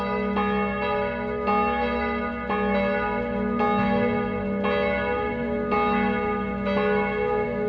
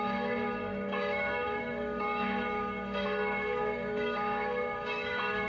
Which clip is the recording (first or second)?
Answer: first